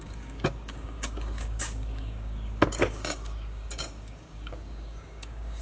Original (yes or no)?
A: no